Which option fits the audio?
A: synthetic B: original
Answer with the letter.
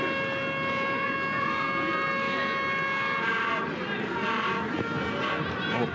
B